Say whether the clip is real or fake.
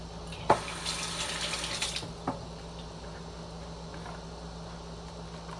real